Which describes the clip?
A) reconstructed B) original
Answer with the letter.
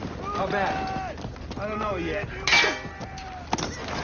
B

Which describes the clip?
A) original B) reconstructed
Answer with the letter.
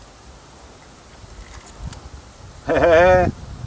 A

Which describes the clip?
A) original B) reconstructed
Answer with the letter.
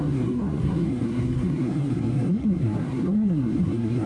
B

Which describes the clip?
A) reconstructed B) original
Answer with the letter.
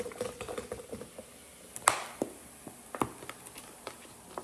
B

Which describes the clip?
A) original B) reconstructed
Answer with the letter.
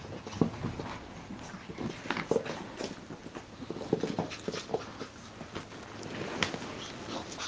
A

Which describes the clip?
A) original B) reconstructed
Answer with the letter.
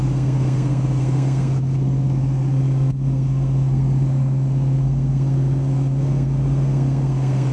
B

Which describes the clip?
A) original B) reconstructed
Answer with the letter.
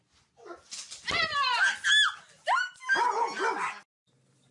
A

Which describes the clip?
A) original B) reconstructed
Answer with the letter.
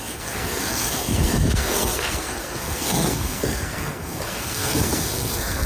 B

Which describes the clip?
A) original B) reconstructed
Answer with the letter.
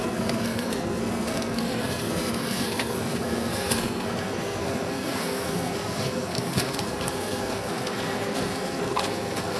B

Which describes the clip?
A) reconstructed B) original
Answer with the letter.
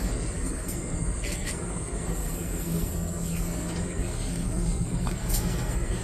A